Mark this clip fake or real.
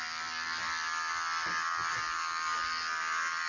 real